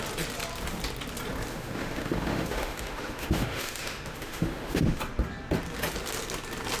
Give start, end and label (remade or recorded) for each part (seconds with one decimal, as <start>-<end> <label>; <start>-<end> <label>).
0.0-1.5 recorded; 1.5-5.0 remade; 5.0-6.8 recorded